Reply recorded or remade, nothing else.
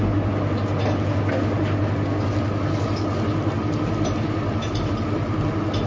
recorded